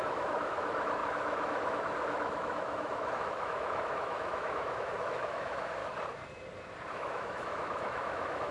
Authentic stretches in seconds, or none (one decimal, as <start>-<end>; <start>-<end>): 5.8-6.9